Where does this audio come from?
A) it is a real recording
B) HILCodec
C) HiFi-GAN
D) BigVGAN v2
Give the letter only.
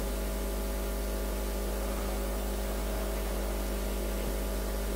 A